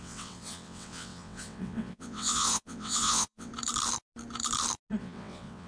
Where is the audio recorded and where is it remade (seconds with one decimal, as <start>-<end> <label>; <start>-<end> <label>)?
0.0-3.5 remade; 3.5-5.0 recorded; 5.0-5.7 remade